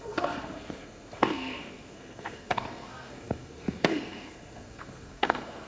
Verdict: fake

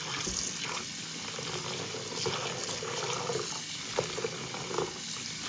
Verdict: real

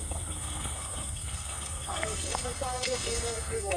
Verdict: fake